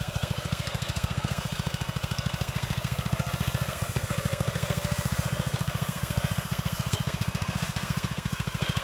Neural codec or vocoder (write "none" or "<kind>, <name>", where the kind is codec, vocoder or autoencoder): codec, SNAC